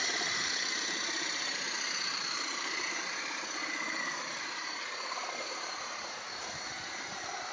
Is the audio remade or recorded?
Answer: remade